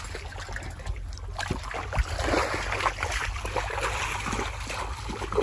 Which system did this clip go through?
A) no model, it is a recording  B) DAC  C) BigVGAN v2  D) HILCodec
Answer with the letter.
A